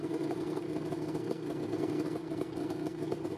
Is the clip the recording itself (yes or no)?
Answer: no